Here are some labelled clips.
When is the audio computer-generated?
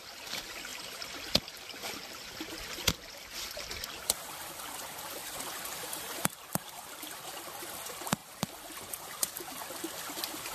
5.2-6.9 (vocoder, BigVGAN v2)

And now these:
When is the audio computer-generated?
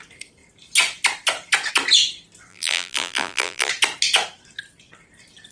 2.5-3.7 (vocoder, BigVGAN v2)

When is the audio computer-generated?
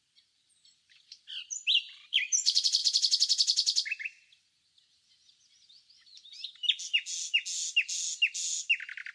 0.0-2.8 (vocoder, BigVGAN v2); 5.7-6.3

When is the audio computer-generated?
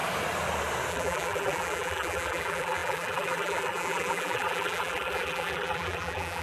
0.9-6.4 (vocoder, BigVGAN v2)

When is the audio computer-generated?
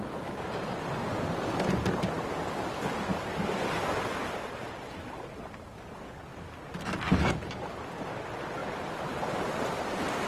3.1-3.6 (vocoder, BigVGAN v2); 4.2-4.8; 6.3-7.4; 8.6-10.3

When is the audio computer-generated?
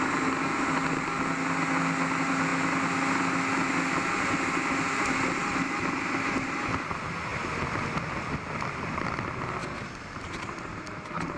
7.3-8.9 (vocoder, BigVGAN v2)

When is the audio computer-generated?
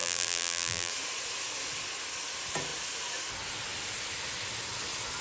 0.0-0.9 (vocoder, BigVGAN v2)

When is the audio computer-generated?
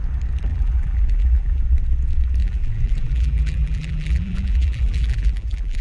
0.5-1.6 (vocoder, BigVGAN v2); 2.4-5.8